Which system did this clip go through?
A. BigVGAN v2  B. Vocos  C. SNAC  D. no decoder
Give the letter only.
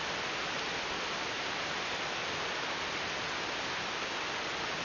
D